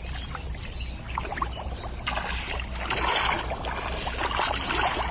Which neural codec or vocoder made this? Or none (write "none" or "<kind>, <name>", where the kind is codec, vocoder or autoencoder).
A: none